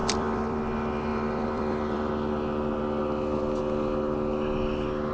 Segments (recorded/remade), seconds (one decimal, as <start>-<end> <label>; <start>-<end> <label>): 0.0-0.6 remade; 0.6-1.1 recorded; 1.1-2.1 remade; 2.1-5.1 recorded